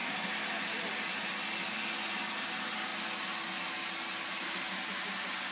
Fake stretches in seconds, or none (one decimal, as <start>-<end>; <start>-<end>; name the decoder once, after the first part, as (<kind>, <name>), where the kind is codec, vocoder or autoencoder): none